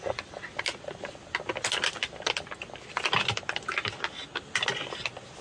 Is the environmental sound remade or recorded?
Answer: recorded